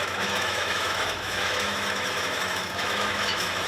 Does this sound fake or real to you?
fake